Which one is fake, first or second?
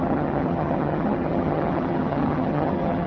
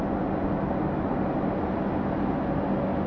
first